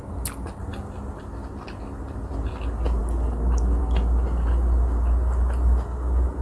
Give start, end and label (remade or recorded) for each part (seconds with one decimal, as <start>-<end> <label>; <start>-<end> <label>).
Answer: 0.0-6.4 recorded